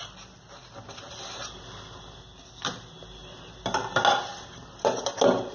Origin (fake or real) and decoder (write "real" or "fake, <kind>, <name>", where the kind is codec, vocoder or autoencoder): real